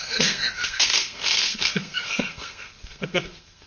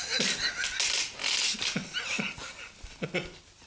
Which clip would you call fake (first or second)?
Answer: first